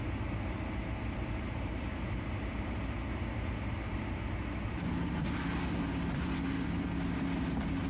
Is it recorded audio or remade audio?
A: recorded